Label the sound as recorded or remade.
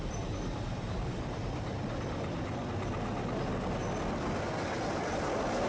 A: recorded